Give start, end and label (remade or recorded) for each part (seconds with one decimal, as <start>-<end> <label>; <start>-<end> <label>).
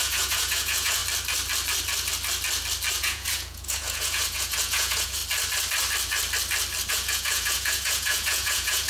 0.0-1.0 remade; 1.0-3.0 recorded; 3.0-5.2 remade; 5.2-6.9 recorded; 6.9-8.9 remade